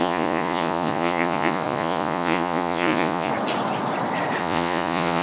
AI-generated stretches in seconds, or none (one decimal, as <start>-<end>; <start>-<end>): 0.0-3.3; 4.4-5.2